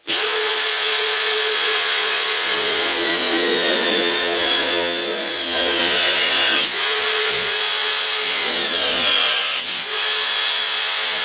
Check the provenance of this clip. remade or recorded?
remade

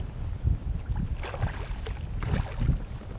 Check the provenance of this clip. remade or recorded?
recorded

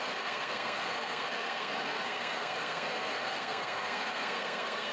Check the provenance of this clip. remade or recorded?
remade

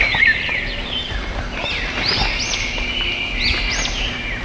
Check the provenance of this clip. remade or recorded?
recorded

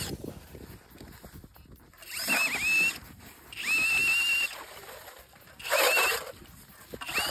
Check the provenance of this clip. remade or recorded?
recorded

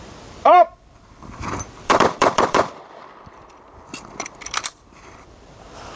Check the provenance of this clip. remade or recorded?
remade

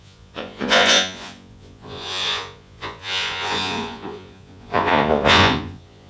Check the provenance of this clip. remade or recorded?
remade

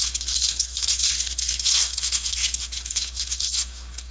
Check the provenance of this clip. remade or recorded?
remade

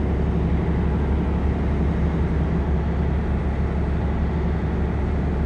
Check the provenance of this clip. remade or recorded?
recorded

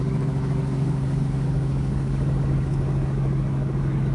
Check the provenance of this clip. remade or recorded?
remade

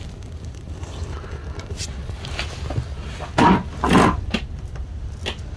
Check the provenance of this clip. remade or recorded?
recorded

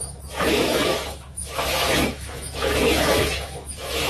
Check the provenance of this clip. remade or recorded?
remade